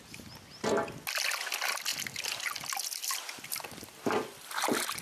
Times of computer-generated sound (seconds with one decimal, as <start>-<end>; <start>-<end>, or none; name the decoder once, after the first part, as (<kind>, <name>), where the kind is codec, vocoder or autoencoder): 1.9-2.4 (vocoder, BigVGAN v2); 3.0-4.5